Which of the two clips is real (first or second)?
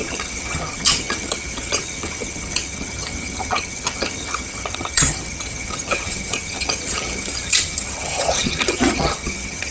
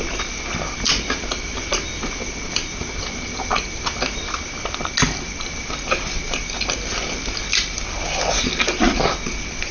second